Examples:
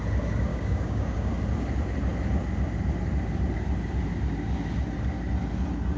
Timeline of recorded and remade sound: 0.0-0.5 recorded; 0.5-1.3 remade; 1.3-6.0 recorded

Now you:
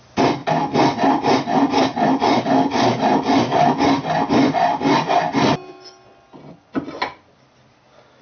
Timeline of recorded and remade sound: 0.0-8.2 recorded

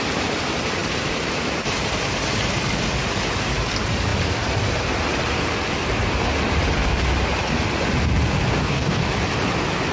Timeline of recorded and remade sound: 0.0-8.5 recorded; 8.5-9.0 remade; 9.0-9.9 recorded

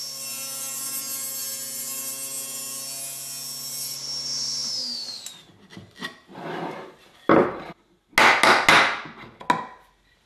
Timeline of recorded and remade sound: 0.0-10.3 recorded

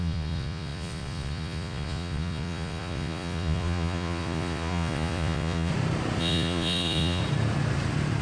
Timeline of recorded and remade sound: 0.0-5.7 remade; 5.7-6.2 recorded; 6.2-7.2 remade; 7.2-8.2 recorded

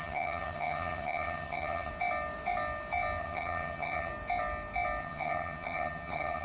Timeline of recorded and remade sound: 0.0-1.9 remade; 1.9-3.2 recorded; 3.2-4.1 remade; 4.1-5.0 recorded; 5.0-6.4 remade

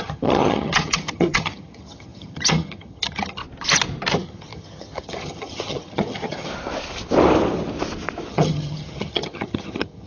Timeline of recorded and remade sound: 0.0-3.4 remade; 3.4-4.1 recorded; 4.1-6.5 remade; 6.5-8.3 recorded; 8.3-10.1 remade